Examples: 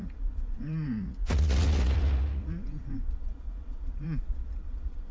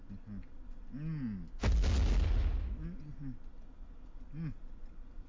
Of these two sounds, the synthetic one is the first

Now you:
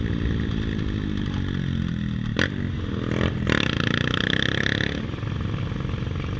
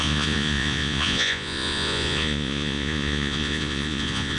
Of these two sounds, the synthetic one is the second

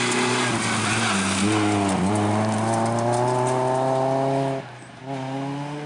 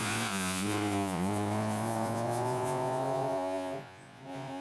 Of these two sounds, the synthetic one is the second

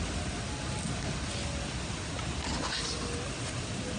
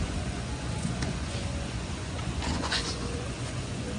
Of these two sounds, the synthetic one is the second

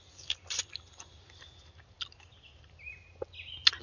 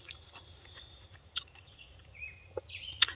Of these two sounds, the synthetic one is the second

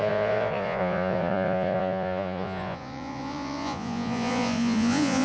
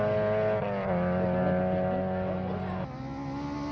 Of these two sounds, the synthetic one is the first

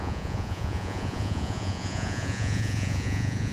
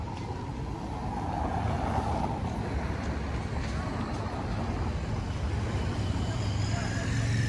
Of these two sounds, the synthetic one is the first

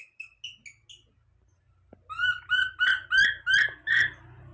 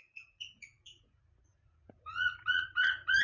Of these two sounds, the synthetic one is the second